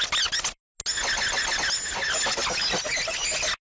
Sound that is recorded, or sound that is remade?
recorded